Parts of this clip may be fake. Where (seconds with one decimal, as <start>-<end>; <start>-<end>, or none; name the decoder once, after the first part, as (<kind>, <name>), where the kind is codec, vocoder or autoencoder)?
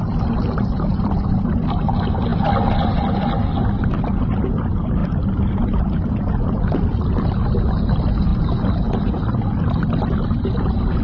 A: 5.0-6.1 (vocoder, BigVGAN v2)